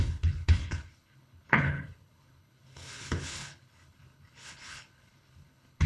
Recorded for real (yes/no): no